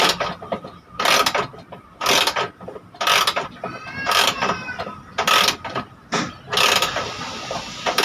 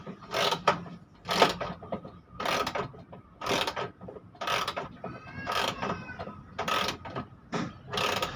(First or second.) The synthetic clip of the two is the second